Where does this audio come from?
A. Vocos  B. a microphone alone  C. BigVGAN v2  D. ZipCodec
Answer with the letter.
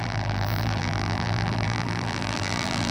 C